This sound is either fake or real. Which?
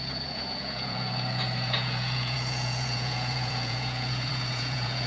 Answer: fake